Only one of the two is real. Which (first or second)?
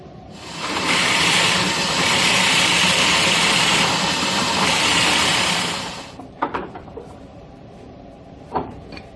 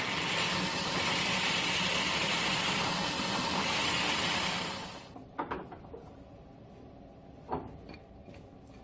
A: second